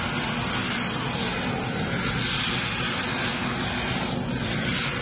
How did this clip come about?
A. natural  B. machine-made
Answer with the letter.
A